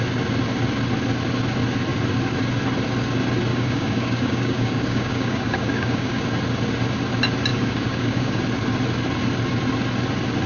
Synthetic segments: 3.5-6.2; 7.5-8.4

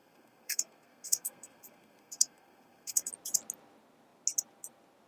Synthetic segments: 0.0-3.1